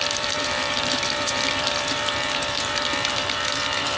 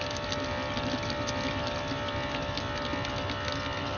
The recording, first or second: second